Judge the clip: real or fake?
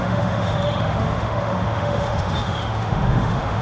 fake